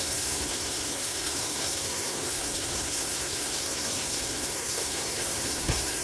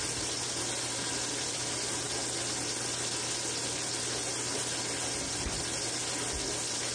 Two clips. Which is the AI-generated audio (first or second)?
first